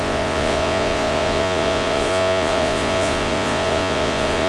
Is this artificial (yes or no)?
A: yes